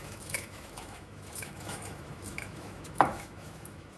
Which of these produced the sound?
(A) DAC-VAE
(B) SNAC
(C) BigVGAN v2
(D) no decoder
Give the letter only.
A